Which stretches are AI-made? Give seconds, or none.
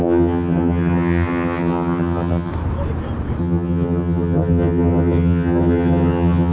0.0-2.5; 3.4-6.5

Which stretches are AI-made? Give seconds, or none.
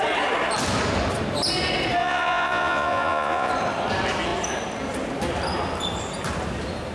2.0-3.5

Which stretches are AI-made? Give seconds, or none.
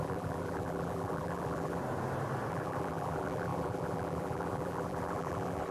0.0-1.8; 2.5-5.7